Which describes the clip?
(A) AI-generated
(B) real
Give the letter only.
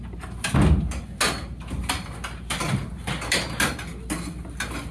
B